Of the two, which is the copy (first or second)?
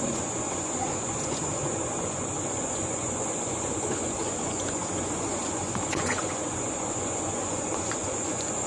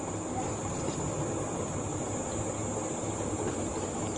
first